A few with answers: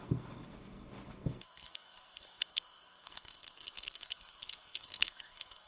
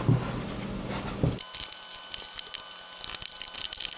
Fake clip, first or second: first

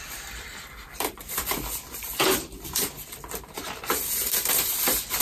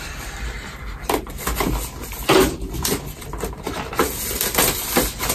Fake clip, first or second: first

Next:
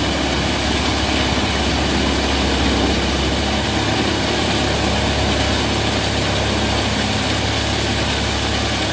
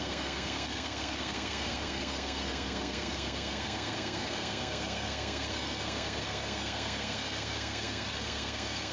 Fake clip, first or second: second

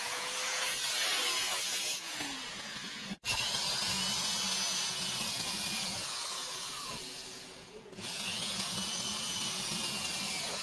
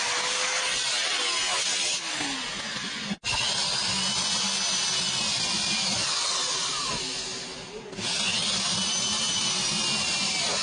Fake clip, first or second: first